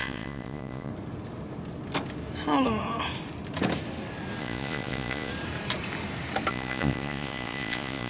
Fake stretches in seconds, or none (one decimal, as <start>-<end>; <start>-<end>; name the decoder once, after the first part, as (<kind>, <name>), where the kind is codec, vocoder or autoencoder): 0.0-0.9 (vocoder, Vocos); 4.4-5.3; 6.5-8.1